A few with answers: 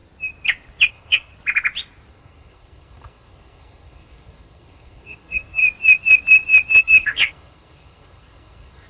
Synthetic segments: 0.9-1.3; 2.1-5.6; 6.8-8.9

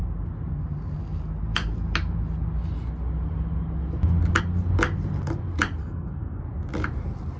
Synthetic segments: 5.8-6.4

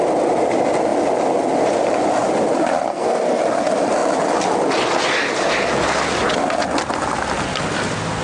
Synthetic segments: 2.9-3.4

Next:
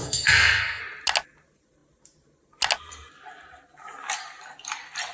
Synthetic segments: 0.0-0.8